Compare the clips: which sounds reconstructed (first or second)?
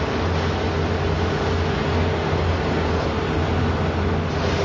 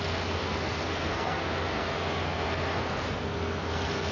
second